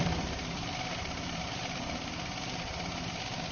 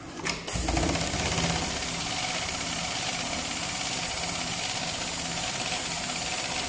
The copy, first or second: first